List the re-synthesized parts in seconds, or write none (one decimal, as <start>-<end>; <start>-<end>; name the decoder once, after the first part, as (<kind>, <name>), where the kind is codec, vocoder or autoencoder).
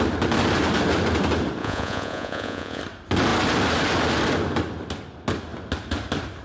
1.6-2.8 (vocoder, Vocos)